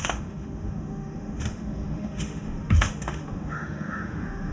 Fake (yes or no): yes